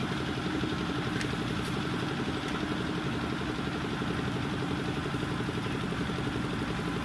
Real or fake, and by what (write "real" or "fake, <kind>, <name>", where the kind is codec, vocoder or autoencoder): real